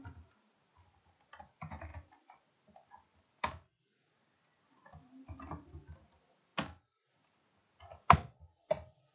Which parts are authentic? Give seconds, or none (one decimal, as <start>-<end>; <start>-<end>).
0.0-9.1